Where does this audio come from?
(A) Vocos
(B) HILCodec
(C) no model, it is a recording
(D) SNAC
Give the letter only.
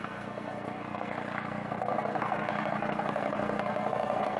D